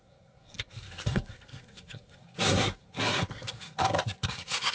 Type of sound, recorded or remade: remade